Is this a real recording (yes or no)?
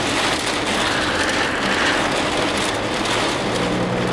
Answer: yes